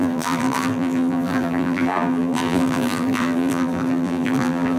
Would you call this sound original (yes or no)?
no